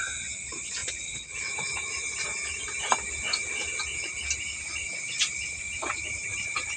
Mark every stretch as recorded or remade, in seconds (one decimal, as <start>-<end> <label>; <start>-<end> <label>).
0.0-0.8 recorded; 0.8-1.5 remade; 1.5-6.8 recorded